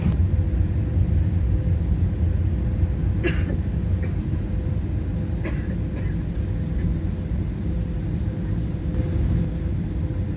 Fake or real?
real